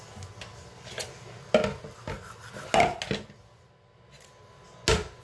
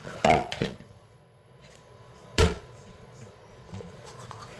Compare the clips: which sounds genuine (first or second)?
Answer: first